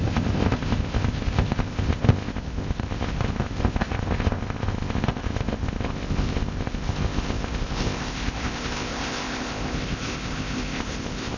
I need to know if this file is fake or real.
fake